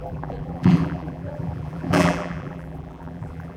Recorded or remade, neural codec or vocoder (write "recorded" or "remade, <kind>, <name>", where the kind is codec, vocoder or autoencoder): remade, vocoder, BigVGAN v2